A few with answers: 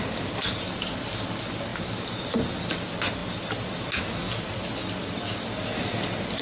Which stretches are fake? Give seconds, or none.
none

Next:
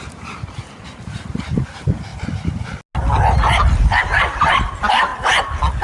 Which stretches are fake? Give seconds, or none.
0.0-2.1 (vocoder, BigVGAN v2); 4.0-5.1

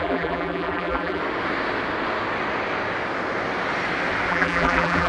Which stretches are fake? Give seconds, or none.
0.0-1.2 (vocoder, BigVGAN v2); 4.3-5.1

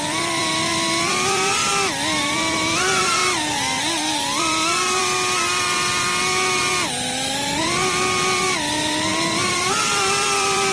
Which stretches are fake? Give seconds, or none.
0.0-3.2 (vocoder, BigVGAN v2); 4.4-5.0; 7.6-10.7

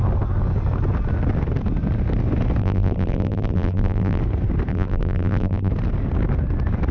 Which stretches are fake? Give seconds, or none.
2.6-4.2 (vocoder, BigVGAN v2); 4.7-5.7

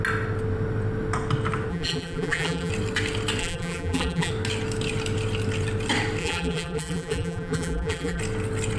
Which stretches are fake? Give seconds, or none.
1.7-2.7 (vocoder, BigVGAN v2); 3.4-4.3; 6.2-8.2

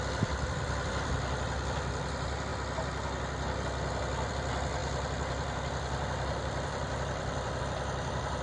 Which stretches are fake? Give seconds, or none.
0.0-2.5 (vocoder, BigVGAN v2); 4.3-8.4